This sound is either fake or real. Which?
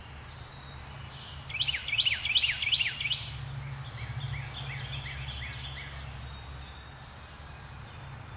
real